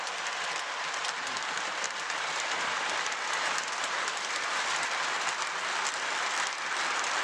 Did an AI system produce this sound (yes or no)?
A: no